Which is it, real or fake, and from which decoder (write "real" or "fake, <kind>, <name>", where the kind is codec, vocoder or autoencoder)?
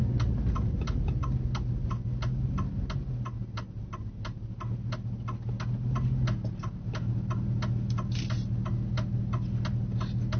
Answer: real